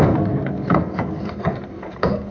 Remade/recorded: remade